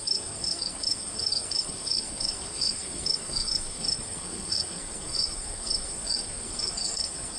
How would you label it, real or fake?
fake